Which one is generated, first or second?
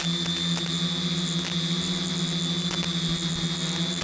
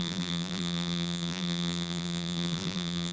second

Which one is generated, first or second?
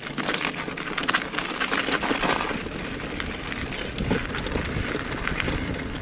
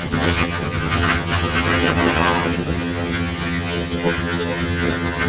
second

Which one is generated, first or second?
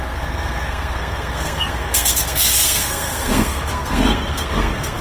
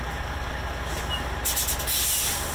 first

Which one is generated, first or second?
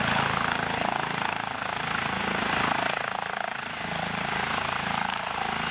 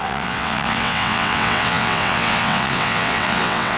second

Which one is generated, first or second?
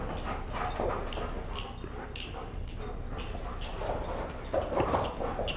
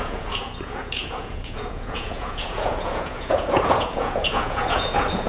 second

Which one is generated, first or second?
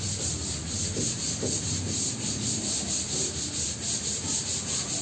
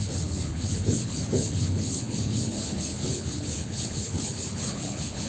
second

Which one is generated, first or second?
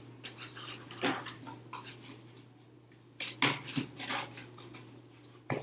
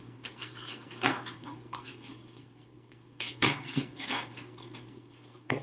second